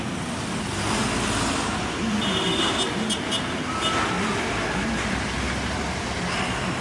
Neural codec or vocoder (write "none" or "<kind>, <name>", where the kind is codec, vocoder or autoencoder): none